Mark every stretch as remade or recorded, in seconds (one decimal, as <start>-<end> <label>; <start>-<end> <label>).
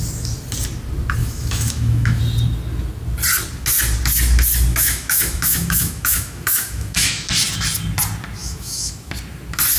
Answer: 0.0-1.2 recorded; 1.2-2.2 remade; 2.2-4.7 recorded; 4.7-7.3 remade; 7.3-8.4 recorded; 8.4-9.1 remade; 9.1-9.8 recorded